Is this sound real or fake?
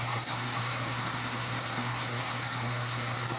fake